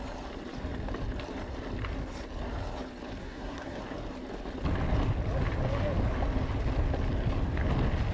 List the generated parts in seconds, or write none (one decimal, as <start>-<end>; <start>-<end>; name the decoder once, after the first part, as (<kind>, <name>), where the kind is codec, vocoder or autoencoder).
3.2-3.8 (codec, SNAC)